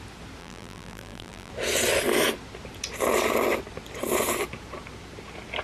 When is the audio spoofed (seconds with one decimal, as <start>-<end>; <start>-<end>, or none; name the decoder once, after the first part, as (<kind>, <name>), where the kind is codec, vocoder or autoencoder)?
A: 0.4-1.5 (vocoder, BigVGAN v2)